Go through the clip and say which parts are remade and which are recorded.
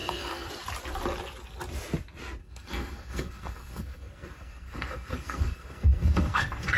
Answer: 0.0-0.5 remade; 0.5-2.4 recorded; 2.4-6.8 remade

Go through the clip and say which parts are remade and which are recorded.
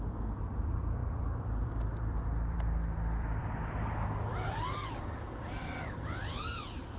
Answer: 0.0-7.0 remade